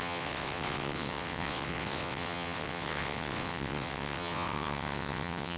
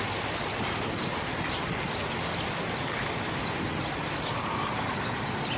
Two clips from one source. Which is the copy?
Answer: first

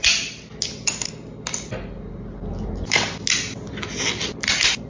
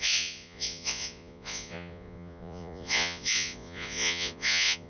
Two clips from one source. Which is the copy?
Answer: second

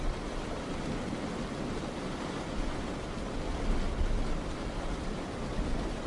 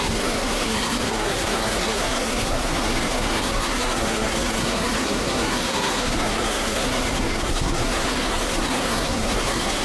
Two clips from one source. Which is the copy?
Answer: second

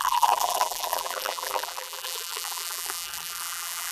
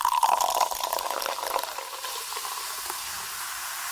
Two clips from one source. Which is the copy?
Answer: first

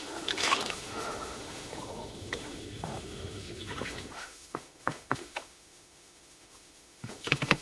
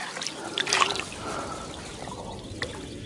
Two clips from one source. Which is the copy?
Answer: first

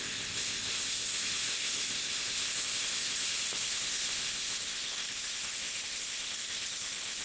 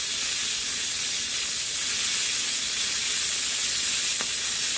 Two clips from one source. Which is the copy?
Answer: first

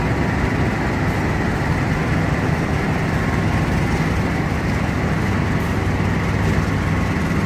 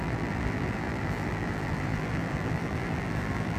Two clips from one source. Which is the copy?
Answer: second